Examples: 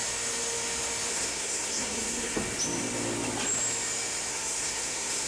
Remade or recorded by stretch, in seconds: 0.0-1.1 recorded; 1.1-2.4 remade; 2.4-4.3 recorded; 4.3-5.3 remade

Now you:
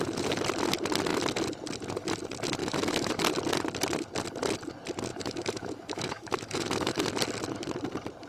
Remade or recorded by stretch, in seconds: 0.0-2.6 recorded; 2.6-3.1 remade; 3.1-5.1 recorded; 5.1-7.0 remade; 7.0-8.3 recorded

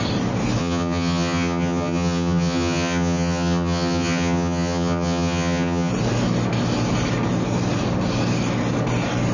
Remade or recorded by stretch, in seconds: 0.0-0.6 recorded; 0.6-5.9 remade; 5.9-9.3 recorded

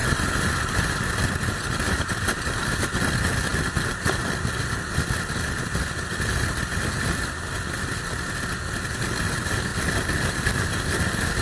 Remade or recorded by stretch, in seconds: 0.0-0.9 recorded; 0.9-3.5 remade; 3.5-7.0 recorded; 7.0-9.7 remade; 9.7-10.3 recorded; 10.3-11.4 remade

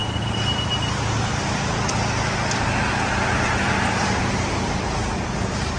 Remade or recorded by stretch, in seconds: 0.0-3.5 recorded; 3.5-5.8 remade